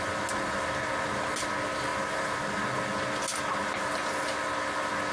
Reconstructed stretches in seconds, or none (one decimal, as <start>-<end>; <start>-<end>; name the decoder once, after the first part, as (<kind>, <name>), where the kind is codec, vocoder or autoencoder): none